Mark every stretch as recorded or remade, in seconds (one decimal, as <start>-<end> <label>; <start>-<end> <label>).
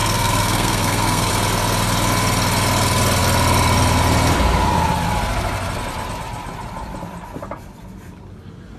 0.0-1.3 remade; 1.3-8.8 recorded